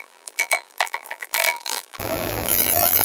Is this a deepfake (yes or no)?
yes